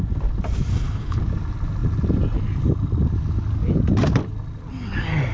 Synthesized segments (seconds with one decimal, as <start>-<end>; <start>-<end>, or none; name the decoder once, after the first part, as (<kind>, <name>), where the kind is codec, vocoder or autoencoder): 0.7-1.2 (codec, HILCodec)